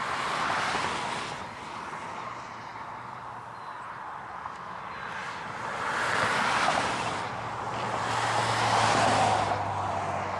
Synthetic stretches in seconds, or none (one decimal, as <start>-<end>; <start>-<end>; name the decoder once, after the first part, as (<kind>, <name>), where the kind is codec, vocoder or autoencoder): 2.7-3.4 (vocoder, BigVGAN v2); 5.2-8.0